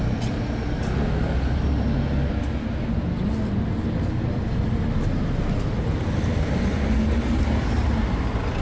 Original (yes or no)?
yes